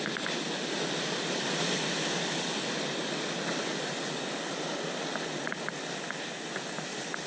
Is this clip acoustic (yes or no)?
yes